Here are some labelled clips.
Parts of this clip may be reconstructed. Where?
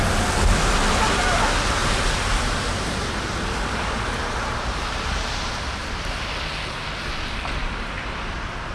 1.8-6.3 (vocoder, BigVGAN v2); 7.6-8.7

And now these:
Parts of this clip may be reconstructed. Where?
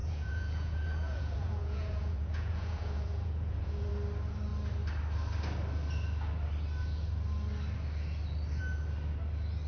0.0-3.9 (vocoder, Vocos)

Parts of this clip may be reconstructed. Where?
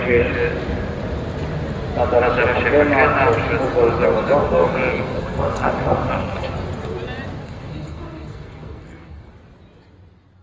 4.4-6.5 (codec, SNAC); 7.4-9.3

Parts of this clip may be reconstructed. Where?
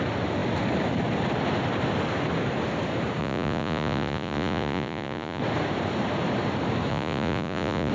3.2-5.4 (vocoder, Vocos); 6.9-7.9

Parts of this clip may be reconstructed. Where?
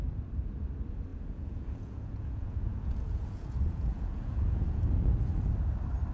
1.1-4.8 (vocoder, Vocos)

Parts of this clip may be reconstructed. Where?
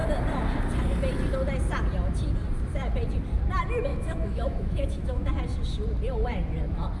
3.9-5.3 (autoencoder, DAC-VAE)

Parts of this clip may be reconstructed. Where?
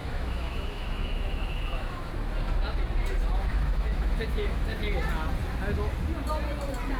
0.0-2.1 (autoencoder, DAC-VAE); 3.5-4.8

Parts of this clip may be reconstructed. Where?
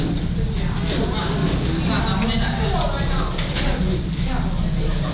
none